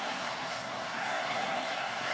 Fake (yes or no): yes